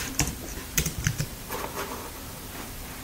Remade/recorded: remade